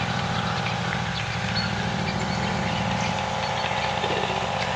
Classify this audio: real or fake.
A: real